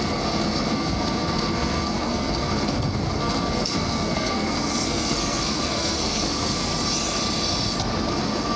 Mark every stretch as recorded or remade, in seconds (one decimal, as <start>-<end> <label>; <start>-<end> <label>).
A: 0.0-6.7 remade; 6.7-8.1 recorded; 8.1-8.6 remade